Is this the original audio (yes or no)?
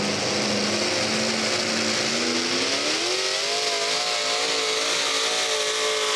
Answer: yes